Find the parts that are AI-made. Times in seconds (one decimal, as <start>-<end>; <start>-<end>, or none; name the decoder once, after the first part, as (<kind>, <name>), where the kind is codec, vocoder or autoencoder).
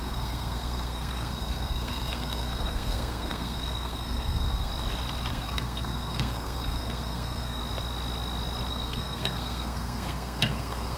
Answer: 0.0-4.7 (codec, SNAC); 5.3-7.6; 8.7-11.0